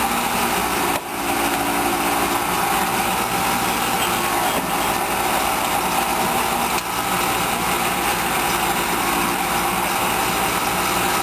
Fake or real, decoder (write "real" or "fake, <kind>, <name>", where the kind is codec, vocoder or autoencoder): real